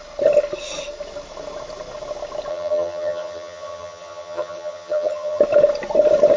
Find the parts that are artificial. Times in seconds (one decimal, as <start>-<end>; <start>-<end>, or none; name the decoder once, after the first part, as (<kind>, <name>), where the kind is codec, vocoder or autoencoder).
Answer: 2.5-5.4 (vocoder, HiFi-GAN)